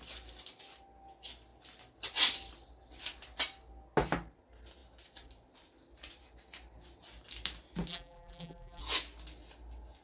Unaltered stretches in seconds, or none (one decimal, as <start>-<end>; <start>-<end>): 0.0-7.9; 8.8-10.0